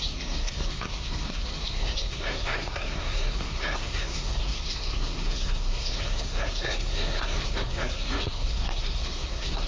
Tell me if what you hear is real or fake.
fake